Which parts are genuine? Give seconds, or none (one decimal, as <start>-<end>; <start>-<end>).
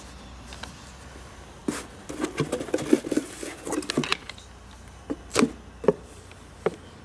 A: 0.0-7.0